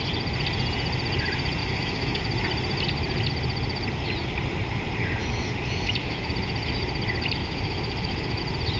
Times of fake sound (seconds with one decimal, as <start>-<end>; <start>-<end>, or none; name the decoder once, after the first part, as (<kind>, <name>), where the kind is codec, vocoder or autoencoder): 1.6-2.2 (autoencoder, DAC-VAE); 5.2-6.3; 7.4-8.4